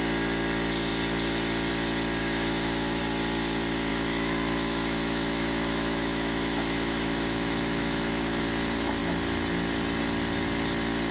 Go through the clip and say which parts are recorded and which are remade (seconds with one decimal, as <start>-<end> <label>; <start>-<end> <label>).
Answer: 0.0-2.2 recorded; 2.2-3.0 remade; 3.0-3.9 recorded; 3.9-8.4 remade; 8.4-11.1 recorded